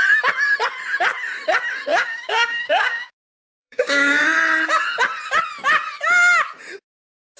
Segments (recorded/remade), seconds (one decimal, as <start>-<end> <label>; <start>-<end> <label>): 0.0-1.9 recorded; 1.9-4.2 remade; 4.2-7.4 recorded